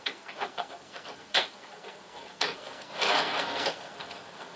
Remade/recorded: remade